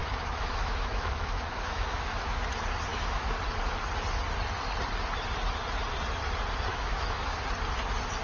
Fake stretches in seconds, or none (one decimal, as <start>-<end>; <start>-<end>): 0.0-2.5; 2.9-3.4; 6.7-7.4